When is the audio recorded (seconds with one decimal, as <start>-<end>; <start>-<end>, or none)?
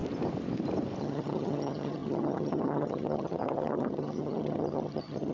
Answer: 0.0-1.0